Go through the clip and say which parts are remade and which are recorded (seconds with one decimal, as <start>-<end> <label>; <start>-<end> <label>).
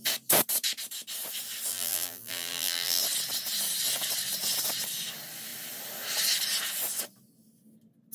0.0-1.7 recorded; 1.7-3.0 remade; 3.0-8.1 recorded